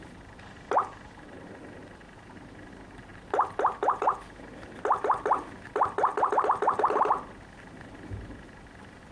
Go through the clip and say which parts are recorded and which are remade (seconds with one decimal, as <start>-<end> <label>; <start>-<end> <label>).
0.0-9.1 recorded